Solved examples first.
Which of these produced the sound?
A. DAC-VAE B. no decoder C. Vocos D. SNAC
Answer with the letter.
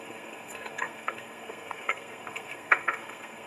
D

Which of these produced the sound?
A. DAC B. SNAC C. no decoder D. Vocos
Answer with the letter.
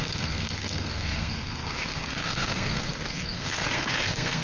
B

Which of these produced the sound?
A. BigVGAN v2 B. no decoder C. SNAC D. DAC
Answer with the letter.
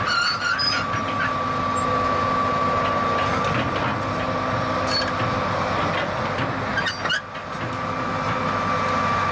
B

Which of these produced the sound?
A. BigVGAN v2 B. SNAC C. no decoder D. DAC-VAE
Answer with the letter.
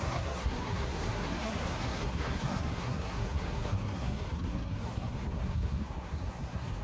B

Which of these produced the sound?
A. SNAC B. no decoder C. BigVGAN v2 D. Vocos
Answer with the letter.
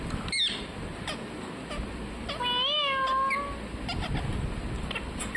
B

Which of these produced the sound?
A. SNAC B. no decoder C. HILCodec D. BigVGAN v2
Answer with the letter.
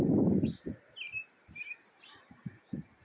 B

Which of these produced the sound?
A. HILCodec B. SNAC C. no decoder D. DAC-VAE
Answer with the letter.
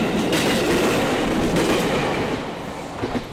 C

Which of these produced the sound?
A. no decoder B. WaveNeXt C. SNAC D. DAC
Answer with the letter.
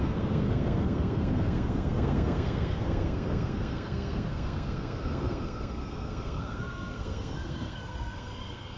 C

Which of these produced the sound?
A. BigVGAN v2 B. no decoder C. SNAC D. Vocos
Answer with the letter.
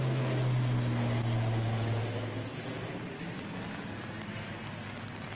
B